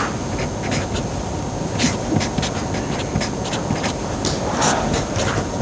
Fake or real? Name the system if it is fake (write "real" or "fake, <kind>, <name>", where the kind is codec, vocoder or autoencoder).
real